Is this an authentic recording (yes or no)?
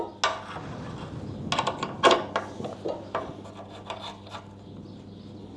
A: yes